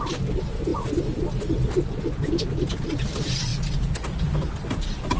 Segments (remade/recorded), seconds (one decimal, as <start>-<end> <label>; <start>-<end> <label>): 0.0-5.2 recorded